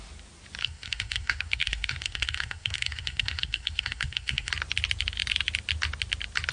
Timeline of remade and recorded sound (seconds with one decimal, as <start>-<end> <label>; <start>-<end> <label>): 0.0-0.6 recorded; 0.6-4.5 remade; 4.5-6.5 recorded